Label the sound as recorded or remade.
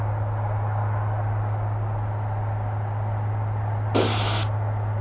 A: recorded